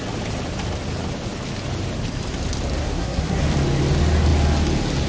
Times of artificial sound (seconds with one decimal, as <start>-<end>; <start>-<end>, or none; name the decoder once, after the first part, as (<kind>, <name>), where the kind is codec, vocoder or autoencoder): 2.8-3.4 (codec, SNAC)